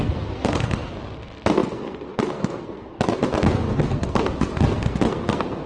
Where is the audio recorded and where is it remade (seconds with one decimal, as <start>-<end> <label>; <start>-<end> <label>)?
0.0-5.7 remade